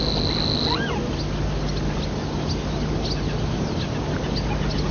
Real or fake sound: real